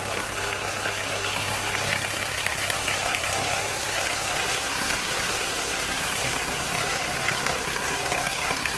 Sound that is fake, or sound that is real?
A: fake